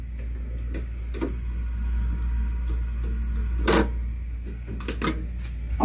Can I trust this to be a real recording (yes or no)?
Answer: yes